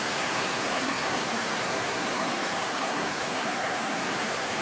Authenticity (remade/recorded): remade